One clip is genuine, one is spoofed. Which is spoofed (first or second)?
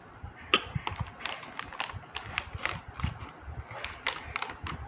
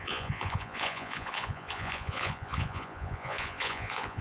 second